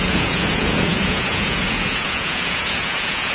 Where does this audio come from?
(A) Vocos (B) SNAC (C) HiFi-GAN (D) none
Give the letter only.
A